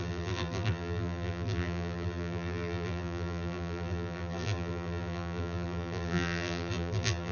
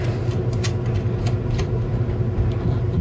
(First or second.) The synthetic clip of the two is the first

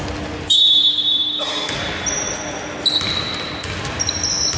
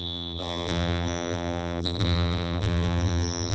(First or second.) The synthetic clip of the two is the second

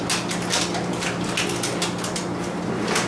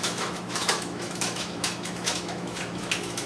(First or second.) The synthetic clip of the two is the second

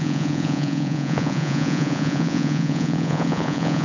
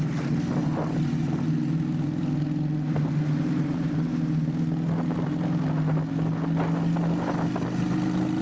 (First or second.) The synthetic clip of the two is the first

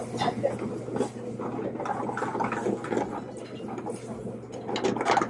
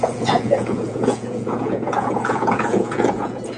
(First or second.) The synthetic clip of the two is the second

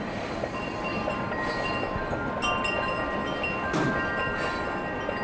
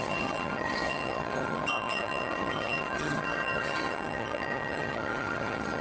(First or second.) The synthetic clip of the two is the second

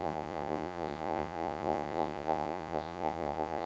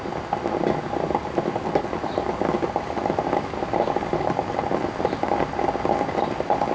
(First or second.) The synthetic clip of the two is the first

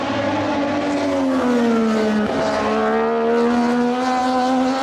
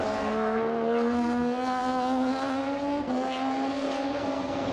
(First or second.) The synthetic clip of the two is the second